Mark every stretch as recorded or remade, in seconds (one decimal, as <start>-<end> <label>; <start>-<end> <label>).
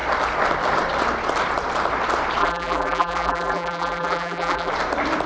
0.0-2.4 recorded; 2.4-4.7 remade; 4.7-5.3 recorded